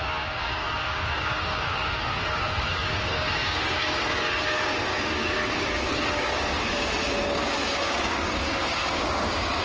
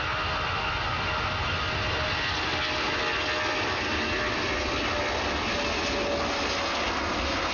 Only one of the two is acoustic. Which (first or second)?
second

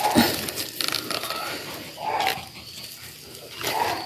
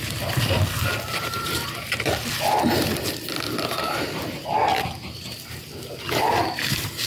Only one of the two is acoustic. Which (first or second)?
first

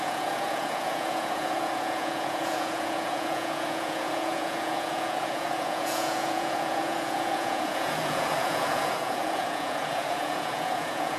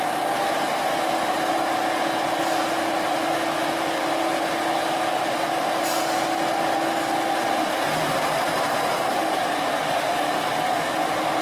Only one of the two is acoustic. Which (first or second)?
second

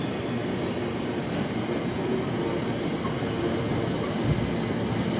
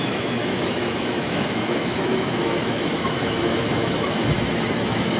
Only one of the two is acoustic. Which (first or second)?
first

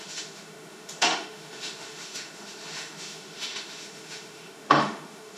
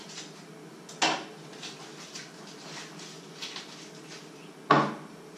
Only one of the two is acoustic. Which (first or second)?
second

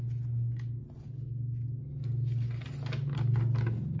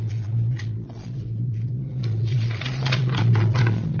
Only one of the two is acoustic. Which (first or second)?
first